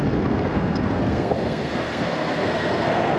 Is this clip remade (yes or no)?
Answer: yes